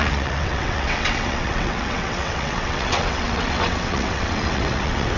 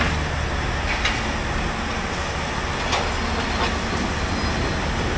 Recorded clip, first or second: second